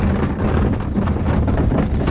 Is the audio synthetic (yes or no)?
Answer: no